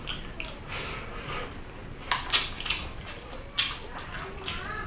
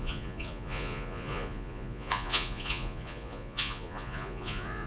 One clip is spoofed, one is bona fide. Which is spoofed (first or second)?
second